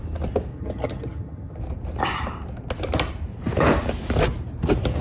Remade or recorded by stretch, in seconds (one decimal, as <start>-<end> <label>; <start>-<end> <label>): 0.0-0.5 recorded; 0.5-1.6 remade; 1.6-5.0 recorded